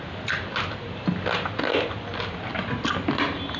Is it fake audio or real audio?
real